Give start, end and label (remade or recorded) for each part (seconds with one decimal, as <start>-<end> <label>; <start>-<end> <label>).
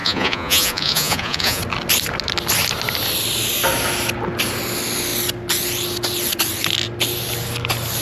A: 0.0-1.6 remade; 1.6-8.0 recorded